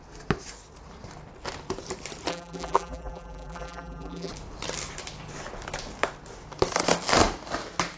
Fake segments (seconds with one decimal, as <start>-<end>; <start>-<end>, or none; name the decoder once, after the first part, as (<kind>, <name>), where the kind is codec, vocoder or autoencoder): 2.3-4.3 (vocoder, BigVGAN v2)